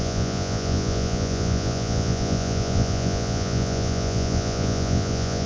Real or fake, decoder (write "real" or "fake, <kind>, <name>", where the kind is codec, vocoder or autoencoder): fake, vocoder, Vocos